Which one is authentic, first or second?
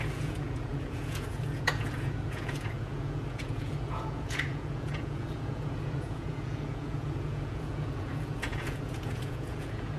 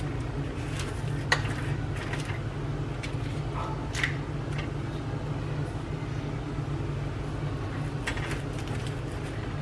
second